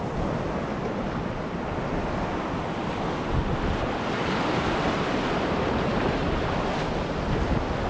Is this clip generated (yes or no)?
no